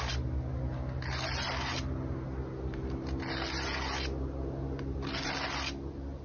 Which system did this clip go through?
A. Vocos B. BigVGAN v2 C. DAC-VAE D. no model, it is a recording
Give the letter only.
D